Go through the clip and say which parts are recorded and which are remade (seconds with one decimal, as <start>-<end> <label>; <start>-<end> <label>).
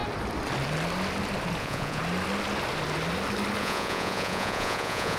0.0-1.6 recorded; 1.6-2.0 remade; 2.0-3.6 recorded; 3.6-5.2 remade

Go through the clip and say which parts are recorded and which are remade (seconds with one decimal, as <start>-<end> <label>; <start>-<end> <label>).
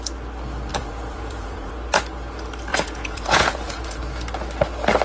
0.0-0.7 recorded; 0.7-1.7 remade; 1.7-2.7 recorded; 2.7-4.0 remade; 4.0-5.0 recorded